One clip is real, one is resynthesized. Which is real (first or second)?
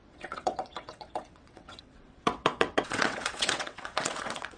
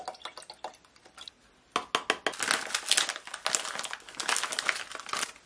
second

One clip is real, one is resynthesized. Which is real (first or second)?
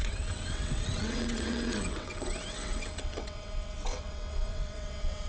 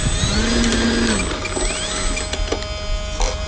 second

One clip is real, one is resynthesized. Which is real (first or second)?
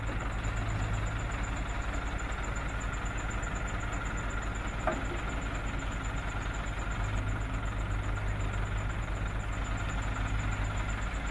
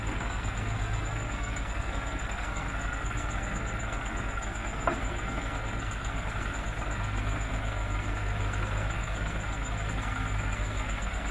first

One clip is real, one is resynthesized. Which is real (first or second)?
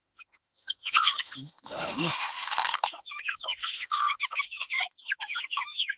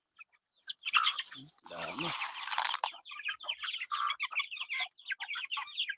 second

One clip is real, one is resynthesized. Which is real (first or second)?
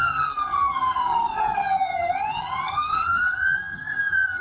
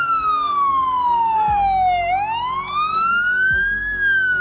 second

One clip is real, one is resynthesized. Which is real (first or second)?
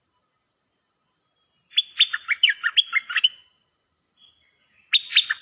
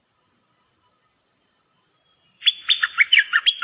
first